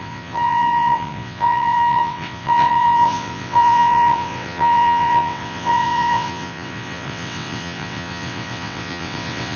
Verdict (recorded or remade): remade